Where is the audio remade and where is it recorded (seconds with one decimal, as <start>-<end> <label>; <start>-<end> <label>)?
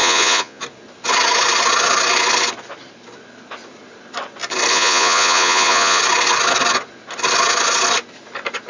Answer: 0.0-0.6 remade; 0.6-4.7 recorded; 4.7-6.0 remade; 6.0-8.7 recorded